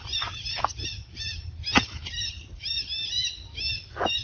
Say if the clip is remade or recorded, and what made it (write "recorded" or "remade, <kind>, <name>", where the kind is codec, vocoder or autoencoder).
recorded